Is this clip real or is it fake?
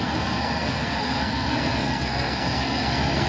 fake